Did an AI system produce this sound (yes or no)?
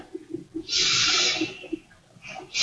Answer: no